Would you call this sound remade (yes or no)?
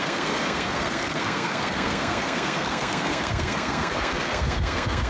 yes